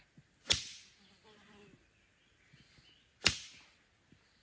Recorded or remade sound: recorded